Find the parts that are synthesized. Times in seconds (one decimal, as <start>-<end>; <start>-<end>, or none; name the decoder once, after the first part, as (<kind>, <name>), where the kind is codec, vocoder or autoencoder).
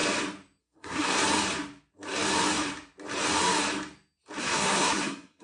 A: 0.6-1.2 (codec, SNAC); 4.4-5.4